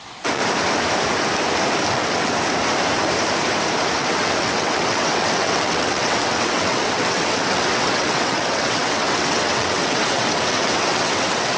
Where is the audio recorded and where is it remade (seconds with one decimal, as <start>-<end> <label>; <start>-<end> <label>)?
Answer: 0.0-0.4 remade; 0.4-1.9 recorded; 1.9-2.3 remade; 2.3-4.0 recorded; 4.0-11.6 remade